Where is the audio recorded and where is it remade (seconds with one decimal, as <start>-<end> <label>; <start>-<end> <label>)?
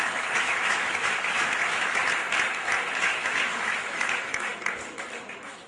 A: 0.0-2.0 remade; 2.0-3.0 recorded; 3.0-4.5 remade; 4.5-5.3 recorded; 5.3-5.7 remade